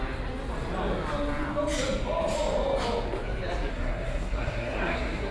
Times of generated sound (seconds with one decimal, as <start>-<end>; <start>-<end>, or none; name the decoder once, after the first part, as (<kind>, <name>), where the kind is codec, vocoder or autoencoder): 3.7-5.3 (codec, SNAC)